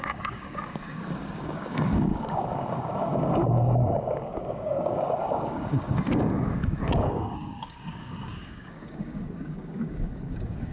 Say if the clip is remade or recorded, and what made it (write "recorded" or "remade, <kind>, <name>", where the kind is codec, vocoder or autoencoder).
remade, codec, DAC